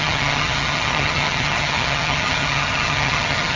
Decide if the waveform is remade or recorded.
remade